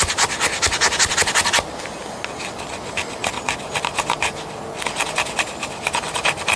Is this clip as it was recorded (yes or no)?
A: yes